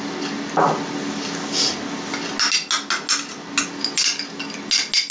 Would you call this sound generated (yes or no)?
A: no